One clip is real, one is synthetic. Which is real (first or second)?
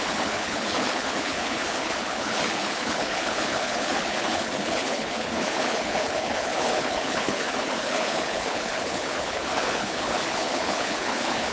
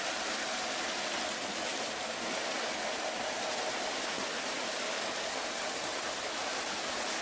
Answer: second